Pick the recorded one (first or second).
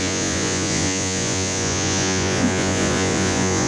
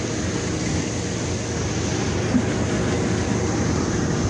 second